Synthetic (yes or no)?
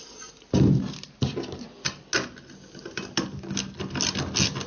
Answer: no